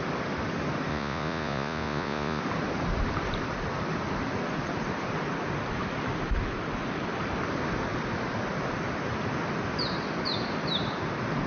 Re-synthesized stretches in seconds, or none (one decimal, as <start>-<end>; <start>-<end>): 0.9-2.4